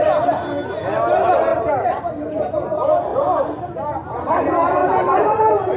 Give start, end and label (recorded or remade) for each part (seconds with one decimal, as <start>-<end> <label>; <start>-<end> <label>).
0.0-1.5 recorded; 1.5-2.3 remade; 2.3-3.1 recorded; 3.1-4.1 remade; 4.1-4.8 recorded; 4.8-5.8 remade